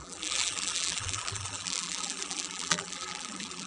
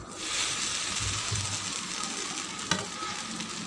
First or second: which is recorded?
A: second